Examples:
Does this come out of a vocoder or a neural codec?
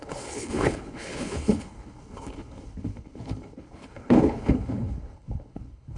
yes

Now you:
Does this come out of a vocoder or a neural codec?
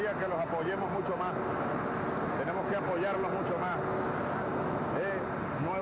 no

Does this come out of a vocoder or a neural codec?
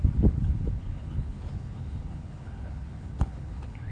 yes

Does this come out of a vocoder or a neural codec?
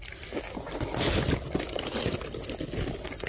no